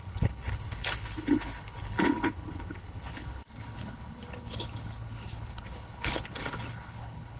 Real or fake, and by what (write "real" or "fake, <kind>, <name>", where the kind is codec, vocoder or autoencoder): fake, codec, HILCodec